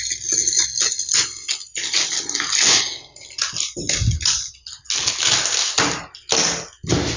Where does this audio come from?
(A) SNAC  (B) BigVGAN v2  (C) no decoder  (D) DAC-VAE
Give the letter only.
C